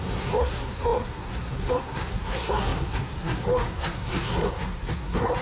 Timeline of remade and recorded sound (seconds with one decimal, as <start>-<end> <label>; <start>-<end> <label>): 0.0-5.4 remade